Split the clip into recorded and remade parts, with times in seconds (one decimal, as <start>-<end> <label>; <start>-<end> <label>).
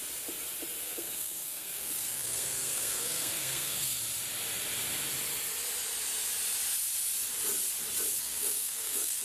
0.0-0.8 recorded; 0.8-4.0 remade; 4.0-8.2 recorded; 8.2-9.2 remade